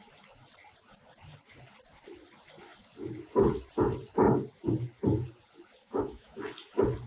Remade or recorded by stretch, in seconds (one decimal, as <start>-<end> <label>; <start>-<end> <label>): 0.0-5.8 recorded; 5.8-6.4 remade; 6.4-7.1 recorded